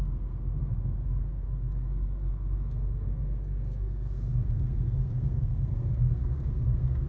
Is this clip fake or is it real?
fake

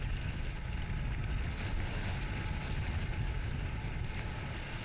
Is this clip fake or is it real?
real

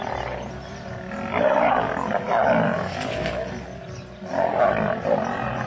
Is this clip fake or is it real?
real